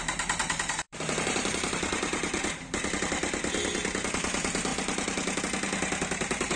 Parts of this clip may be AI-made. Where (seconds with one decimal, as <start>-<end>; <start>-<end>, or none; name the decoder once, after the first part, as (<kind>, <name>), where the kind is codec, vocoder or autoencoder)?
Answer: 0.4-3.3 (vocoder, BigVGAN v2); 4.7-5.4